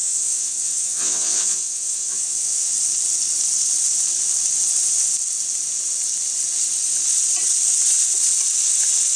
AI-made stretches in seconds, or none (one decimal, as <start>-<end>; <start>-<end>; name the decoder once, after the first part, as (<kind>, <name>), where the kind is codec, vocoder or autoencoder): 0.0-2.7 (vocoder, WaveNeXt)